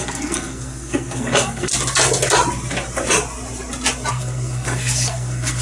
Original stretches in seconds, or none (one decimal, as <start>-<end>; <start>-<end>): 1.7-4.1